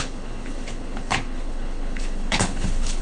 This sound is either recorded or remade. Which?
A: remade